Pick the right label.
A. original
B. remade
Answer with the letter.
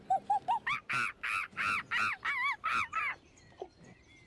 A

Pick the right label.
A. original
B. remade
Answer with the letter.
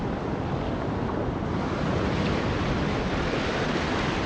A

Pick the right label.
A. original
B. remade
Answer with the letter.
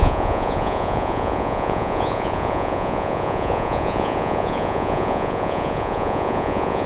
B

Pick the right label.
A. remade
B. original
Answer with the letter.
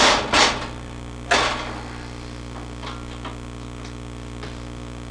B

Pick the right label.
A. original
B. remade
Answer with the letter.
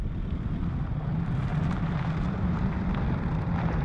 A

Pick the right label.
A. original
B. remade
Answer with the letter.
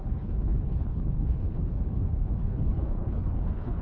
B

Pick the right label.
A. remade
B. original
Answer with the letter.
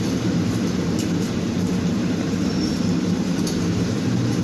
A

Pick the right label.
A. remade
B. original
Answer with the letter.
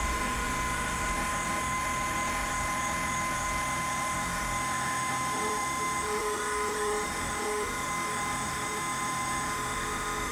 A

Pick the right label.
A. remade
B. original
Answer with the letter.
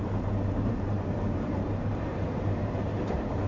A